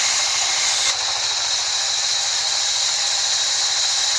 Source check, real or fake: fake